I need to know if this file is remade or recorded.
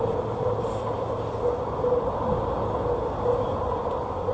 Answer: recorded